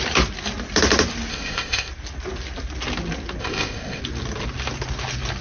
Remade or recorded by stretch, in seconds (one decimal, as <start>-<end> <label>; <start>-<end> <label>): 0.0-1.3 recorded; 1.3-1.9 remade; 1.9-3.4 recorded; 3.4-4.0 remade; 4.0-5.4 recorded